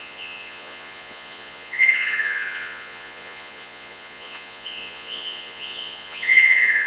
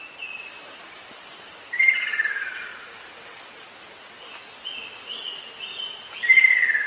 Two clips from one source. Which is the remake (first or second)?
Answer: first